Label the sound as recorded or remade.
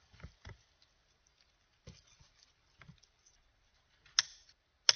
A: recorded